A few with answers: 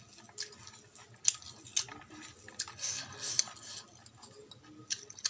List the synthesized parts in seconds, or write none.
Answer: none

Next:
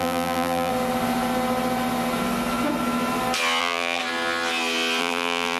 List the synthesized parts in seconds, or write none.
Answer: 0.0-0.7 (vocoder, BigVGAN v2); 3.6-4.0; 5.0-5.6

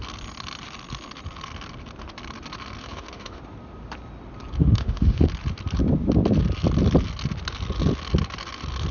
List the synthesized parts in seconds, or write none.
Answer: 2.8-3.4 (autoencoder, DAC-VAE); 4.6-5.3

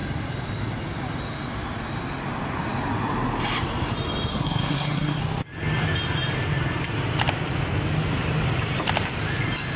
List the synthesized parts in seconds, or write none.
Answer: 4.3-5.2 (codec, SNAC)

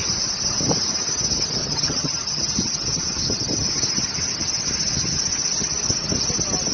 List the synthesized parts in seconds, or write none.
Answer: 1.6-2.4 (vocoder, HiFi-GAN)